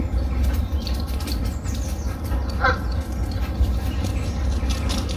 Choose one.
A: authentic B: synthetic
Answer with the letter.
A